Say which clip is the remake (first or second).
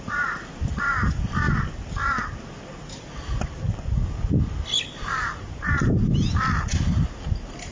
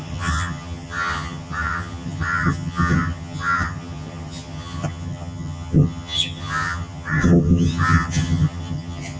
second